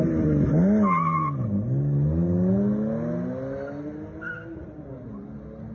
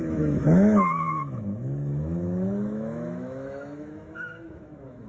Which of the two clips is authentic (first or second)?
first